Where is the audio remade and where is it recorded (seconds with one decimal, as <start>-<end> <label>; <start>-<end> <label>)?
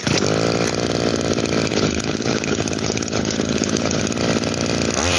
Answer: 0.0-1.7 recorded; 1.7-4.0 remade; 4.0-5.2 recorded